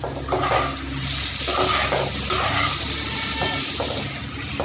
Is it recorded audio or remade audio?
recorded